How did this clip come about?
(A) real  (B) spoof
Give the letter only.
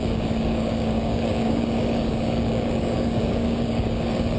B